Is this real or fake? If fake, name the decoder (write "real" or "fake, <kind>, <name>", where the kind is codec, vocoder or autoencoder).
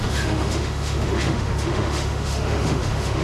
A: fake, autoencoder, DAC-VAE